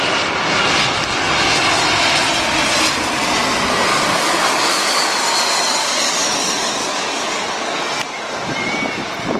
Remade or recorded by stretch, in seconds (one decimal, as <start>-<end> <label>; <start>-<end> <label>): 0.0-3.9 recorded; 3.9-5.1 remade; 5.1-5.8 recorded; 5.8-7.8 remade; 7.8-9.4 recorded